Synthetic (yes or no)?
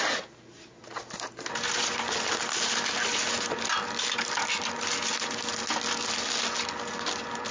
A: no